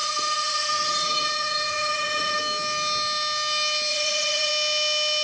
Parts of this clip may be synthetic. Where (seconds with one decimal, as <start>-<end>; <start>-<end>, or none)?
0.0-2.4; 3.9-4.5